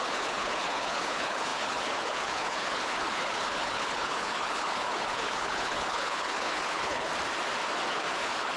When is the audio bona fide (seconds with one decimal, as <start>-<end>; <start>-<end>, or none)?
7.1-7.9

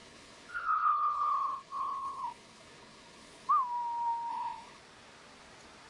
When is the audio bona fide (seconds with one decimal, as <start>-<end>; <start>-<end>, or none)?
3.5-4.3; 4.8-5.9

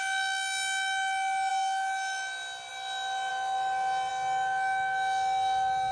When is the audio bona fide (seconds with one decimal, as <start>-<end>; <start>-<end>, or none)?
0.0-5.9